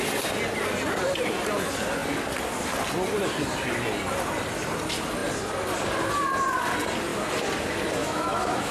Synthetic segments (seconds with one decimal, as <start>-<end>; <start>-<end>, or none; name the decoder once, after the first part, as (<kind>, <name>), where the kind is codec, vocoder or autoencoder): 8.0-8.7 (autoencoder, DAC-VAE)